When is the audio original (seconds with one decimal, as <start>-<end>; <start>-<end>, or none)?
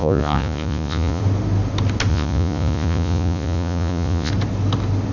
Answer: 1.2-2.1; 4.3-5.1